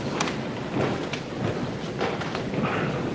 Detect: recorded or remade recorded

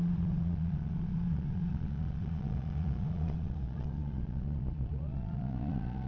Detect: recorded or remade remade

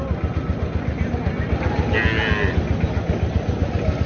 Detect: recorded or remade recorded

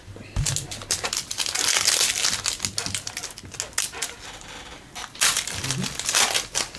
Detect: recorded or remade recorded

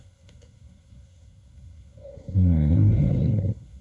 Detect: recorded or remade remade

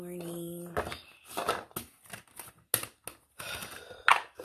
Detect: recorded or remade recorded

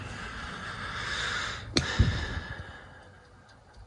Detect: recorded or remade recorded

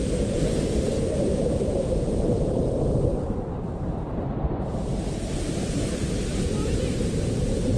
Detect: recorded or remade remade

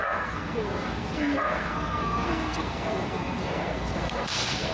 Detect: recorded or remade remade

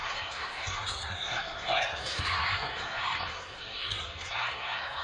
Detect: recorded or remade remade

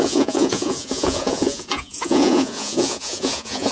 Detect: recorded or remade remade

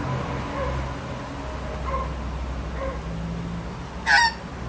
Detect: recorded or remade recorded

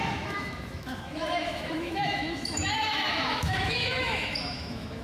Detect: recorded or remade remade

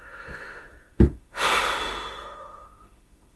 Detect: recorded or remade remade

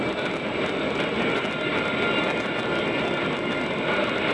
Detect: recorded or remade recorded